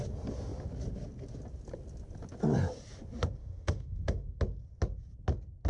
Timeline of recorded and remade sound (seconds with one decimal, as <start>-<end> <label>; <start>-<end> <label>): 0.0-3.4 recorded; 3.4-4.4 remade; 4.4-5.7 recorded